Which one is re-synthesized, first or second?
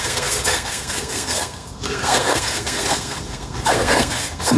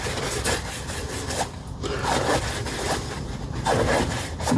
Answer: first